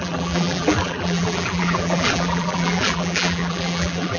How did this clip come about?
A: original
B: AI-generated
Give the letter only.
B